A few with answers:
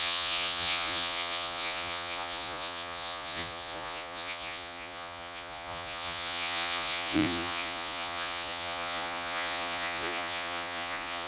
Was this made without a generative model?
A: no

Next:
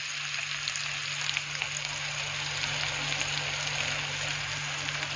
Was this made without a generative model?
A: yes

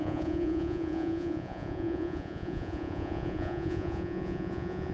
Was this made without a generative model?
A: no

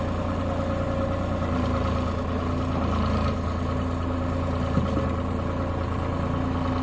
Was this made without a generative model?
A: yes